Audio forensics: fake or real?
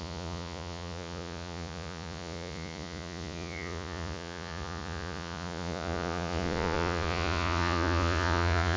fake